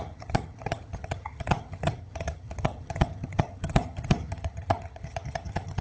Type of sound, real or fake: fake